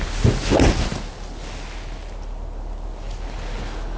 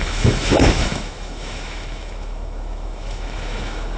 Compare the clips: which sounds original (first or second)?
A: first